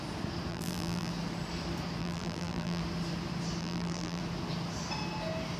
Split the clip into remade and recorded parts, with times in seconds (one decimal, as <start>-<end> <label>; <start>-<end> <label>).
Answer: 0.0-0.5 recorded; 0.5-1.1 remade; 1.1-2.0 recorded; 2.0-2.8 remade; 2.8-3.6 recorded; 3.6-4.2 remade; 4.2-5.6 recorded

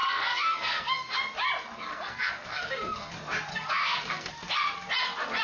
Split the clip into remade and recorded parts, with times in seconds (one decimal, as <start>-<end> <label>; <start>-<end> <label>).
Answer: 0.0-1.2 remade; 1.2-1.9 recorded; 1.9-3.1 remade; 3.1-3.5 recorded; 3.5-4.3 remade; 4.3-5.4 recorded

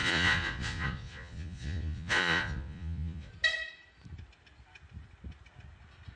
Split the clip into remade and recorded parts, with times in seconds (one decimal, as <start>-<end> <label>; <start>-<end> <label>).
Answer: 0.0-3.3 remade; 3.3-6.2 recorded

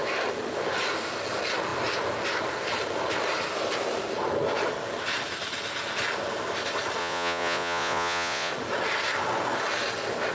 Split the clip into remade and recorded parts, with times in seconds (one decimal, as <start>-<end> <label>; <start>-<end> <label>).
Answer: 0.0-7.0 recorded; 7.0-8.5 remade; 8.5-10.3 recorded

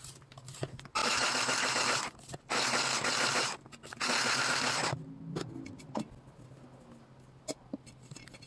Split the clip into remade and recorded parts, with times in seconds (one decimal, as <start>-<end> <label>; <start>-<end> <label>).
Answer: 0.0-8.5 recorded

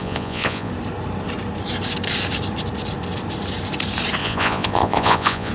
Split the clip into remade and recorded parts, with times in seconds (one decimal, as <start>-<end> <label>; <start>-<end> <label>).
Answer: 0.0-0.7 remade; 0.7-4.2 recorded; 4.2-5.5 remade

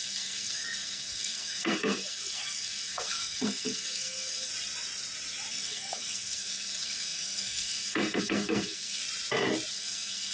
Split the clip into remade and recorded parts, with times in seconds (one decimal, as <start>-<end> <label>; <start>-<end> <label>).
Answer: 0.0-4.5 remade; 4.5-5.5 recorded; 5.5-9.0 remade; 9.0-9.7 recorded; 9.7-10.3 remade